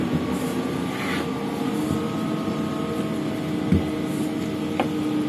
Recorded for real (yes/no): yes